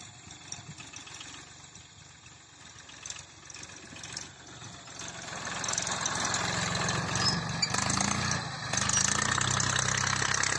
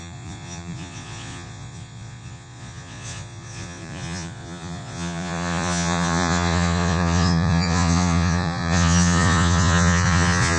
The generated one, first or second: second